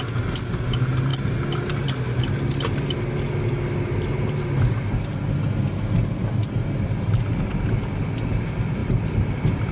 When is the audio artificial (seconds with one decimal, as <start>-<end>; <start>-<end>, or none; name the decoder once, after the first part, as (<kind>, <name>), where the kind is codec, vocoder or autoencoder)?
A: 8.8-9.7 (vocoder, BigVGAN v2)